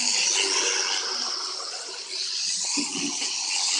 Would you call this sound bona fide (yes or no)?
yes